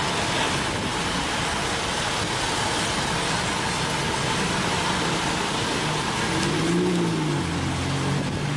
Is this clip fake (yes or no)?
no